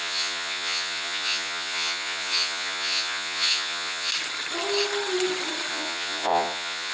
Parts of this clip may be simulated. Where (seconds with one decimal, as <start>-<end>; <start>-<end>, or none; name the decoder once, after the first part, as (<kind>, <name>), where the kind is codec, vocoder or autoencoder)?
0.0-4.1 (vocoder, Vocos); 5.7-6.9